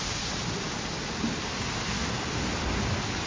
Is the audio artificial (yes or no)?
no